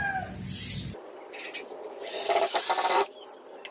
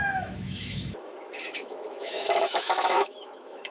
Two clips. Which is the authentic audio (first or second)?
first